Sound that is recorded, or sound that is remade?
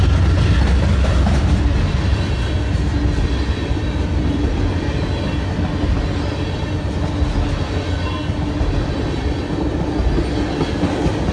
recorded